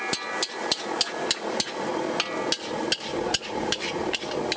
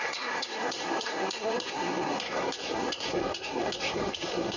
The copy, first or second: second